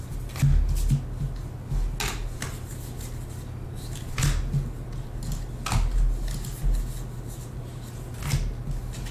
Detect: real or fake real